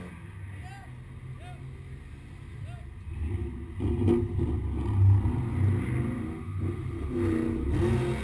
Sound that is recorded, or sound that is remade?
recorded